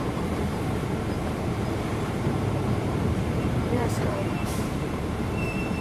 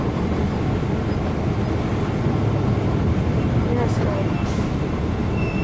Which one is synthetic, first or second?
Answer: first